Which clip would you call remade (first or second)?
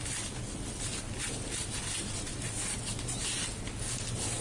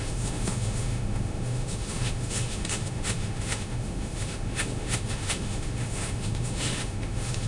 second